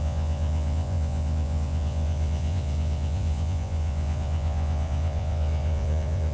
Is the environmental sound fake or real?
fake